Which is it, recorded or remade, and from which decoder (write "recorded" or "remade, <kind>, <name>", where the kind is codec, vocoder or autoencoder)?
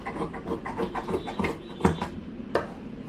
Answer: recorded